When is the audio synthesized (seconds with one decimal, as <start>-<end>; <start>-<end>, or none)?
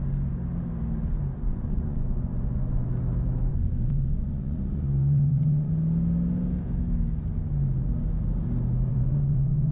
1.5-2.9; 3.5-5.7; 8.9-9.7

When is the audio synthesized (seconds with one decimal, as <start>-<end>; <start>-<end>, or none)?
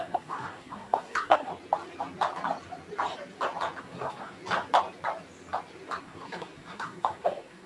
0.0-1.5; 3.8-4.4; 6.0-7.7